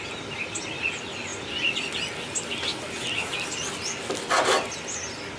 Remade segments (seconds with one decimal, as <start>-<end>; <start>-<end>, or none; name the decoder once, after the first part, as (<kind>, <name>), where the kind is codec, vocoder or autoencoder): none